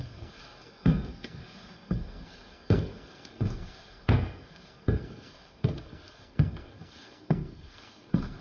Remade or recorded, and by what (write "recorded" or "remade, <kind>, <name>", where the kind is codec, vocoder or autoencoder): remade, codec, SNAC